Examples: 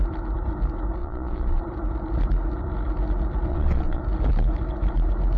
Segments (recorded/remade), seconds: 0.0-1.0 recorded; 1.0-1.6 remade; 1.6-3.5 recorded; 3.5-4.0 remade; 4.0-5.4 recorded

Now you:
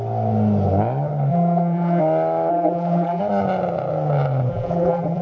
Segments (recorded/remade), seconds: 0.0-1.3 recorded; 1.3-2.0 remade; 2.0-2.5 recorded; 2.5-3.2 remade; 3.2-4.5 recorded; 4.5-5.2 remade

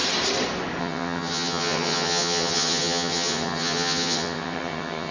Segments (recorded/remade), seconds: 0.0-0.8 recorded; 0.8-5.1 remade

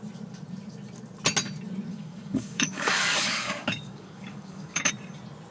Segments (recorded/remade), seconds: 0.0-1.9 recorded; 1.9-4.9 remade; 4.9-5.5 recorded

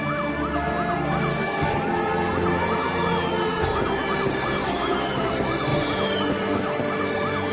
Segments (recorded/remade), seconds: 0.0-1.3 recorded; 1.3-1.8 remade; 1.8-4.6 recorded; 4.6-5.3 remade; 5.3-7.5 recorded

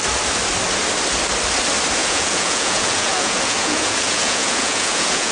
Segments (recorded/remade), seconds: 0.0-2.0 recorded; 2.0-5.3 remade

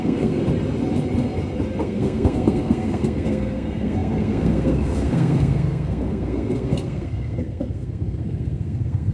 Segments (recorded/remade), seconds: 0.0-0.4 remade; 0.4-1.8 recorded; 1.8-9.1 remade

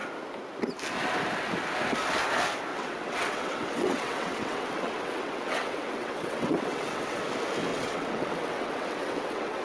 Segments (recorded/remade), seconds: 0.0-2.7 recorded; 2.7-7.2 remade; 7.2-7.7 recorded; 7.7-9.6 remade